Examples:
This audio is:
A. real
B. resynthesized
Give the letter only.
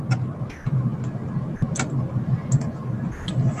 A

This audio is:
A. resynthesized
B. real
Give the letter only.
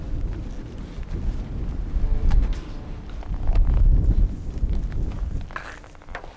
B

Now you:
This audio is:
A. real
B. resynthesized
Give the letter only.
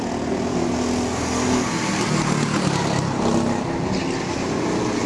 A